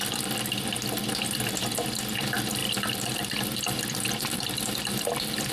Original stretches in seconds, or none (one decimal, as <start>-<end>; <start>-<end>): 0.0-2.6

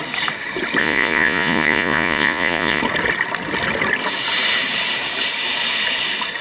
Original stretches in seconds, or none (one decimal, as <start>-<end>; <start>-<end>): 0.0-0.8; 2.8-6.4